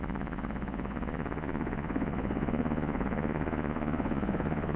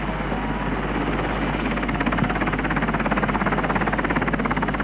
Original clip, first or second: second